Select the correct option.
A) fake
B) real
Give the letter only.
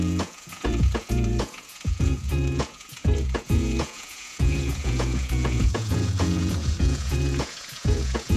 A